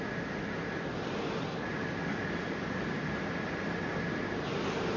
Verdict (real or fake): real